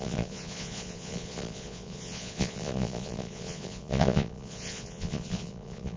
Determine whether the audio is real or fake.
fake